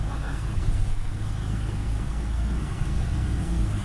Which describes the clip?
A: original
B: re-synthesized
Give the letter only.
B